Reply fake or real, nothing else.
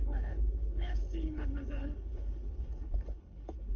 fake